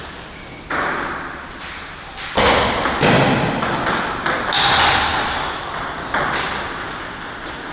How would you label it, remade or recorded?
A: remade